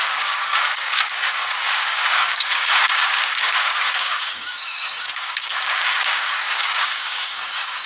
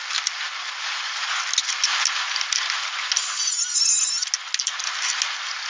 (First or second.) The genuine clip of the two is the second